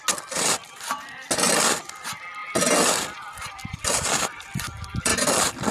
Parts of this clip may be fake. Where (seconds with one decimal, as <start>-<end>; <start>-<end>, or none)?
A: none